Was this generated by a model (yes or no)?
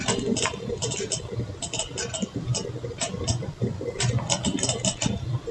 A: no